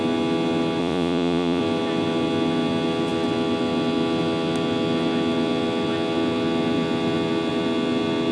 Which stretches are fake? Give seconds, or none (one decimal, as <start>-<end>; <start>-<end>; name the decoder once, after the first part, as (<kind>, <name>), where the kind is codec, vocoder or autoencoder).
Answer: 0.8-1.6 (vocoder, Vocos)